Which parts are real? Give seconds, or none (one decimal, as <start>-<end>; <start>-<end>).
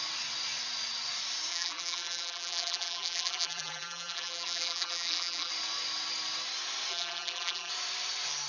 0.0-1.5; 5.5-6.9; 7.7-8.5